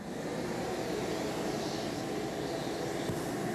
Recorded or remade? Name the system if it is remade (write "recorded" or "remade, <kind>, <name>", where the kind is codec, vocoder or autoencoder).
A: recorded